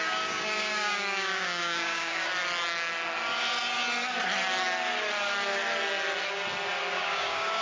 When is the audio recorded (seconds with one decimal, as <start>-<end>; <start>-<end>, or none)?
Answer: 2.3-6.9